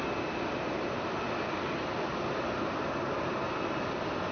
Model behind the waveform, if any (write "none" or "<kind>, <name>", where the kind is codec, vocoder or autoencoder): none